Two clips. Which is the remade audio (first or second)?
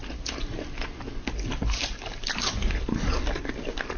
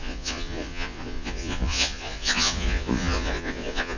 second